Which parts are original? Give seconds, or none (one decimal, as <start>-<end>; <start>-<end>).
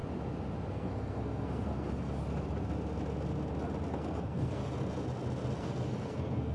0.0-0.7; 2.2-3.9; 4.6-5.6